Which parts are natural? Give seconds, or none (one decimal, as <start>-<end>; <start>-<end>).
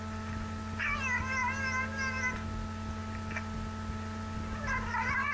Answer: 0.0-5.3